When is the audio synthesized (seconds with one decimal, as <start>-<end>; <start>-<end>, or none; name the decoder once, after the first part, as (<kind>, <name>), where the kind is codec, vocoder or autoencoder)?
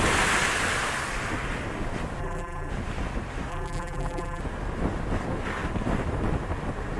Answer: 2.2-2.7 (vocoder, BigVGAN v2); 3.5-4.4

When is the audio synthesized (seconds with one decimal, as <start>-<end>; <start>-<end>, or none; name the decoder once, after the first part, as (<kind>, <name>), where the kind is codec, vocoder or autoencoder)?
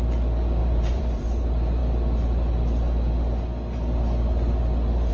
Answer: 0.6-1.4 (vocoder, BigVGAN v2)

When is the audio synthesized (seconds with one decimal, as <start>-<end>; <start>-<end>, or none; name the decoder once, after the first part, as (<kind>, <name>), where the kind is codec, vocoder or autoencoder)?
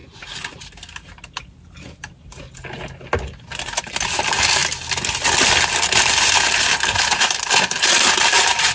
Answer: 3.4-4.6 (vocoder, BigVGAN v2); 6.6-8.7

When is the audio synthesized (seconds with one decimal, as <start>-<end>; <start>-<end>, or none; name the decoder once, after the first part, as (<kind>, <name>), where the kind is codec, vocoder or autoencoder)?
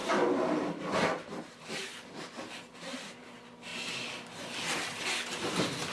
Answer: 1.8-3.2 (vocoder, BigVGAN v2)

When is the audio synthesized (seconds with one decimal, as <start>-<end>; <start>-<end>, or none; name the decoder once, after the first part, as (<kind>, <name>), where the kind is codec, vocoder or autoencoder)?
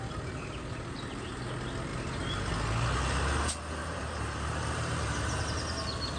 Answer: 1.9-2.5 (vocoder, BigVGAN v2); 3.8-5.4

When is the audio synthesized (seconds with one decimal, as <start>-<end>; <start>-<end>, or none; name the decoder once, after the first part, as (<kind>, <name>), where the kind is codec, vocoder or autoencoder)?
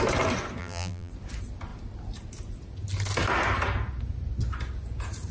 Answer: 0.6-1.1 (vocoder, BigVGAN v2)